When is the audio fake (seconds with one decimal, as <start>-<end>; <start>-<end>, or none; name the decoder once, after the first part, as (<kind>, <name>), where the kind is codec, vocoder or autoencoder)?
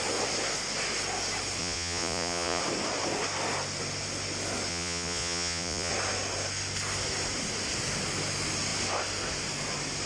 1.6-2.6 (vocoder, Vocos); 4.7-5.9